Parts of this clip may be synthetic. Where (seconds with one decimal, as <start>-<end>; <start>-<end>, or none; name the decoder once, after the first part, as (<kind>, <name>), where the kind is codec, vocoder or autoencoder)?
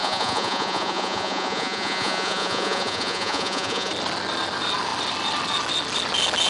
0.0-3.9 (vocoder, Vocos)